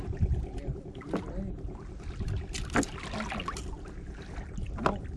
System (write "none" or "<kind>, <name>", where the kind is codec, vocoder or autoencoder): none